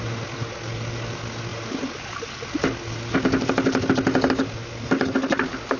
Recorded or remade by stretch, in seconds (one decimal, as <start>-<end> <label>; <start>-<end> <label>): 0.0-5.8 recorded